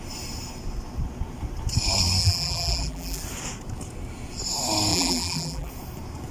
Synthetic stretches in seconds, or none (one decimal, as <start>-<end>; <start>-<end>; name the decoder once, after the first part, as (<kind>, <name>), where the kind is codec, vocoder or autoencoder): 2.2-3.2 (vocoder, BigVGAN v2); 4.9-5.7